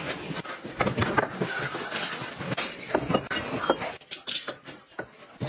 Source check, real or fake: real